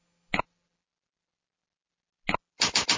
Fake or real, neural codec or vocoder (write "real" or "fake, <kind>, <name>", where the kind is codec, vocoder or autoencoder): real